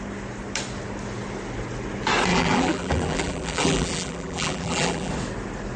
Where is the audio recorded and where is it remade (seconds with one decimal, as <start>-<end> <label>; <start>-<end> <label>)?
0.0-2.3 recorded; 2.3-5.1 remade; 5.1-5.8 recorded